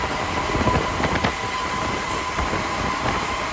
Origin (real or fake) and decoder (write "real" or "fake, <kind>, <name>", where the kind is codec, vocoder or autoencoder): real